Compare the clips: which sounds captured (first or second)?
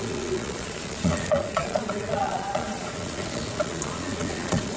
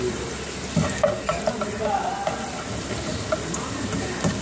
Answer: second